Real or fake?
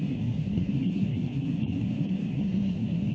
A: fake